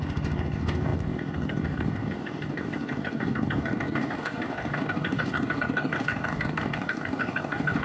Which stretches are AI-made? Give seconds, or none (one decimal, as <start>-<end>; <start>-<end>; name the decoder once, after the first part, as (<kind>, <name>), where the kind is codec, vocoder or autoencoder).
0.0-7.8 (codec, DAC)